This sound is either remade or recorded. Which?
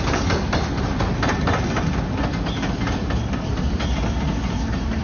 recorded